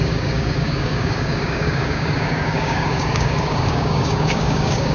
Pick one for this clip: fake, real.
fake